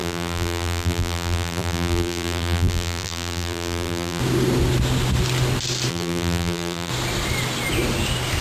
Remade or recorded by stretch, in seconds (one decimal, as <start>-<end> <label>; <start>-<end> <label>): 0.0-4.2 remade; 4.2-5.9 recorded; 5.9-6.9 remade; 6.9-8.4 recorded